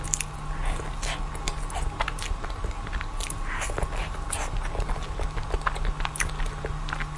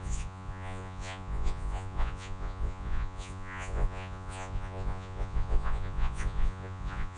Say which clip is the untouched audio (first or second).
first